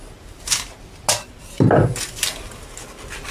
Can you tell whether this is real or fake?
real